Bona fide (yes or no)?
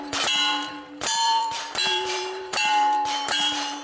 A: no